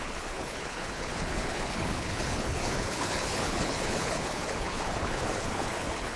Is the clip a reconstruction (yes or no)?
yes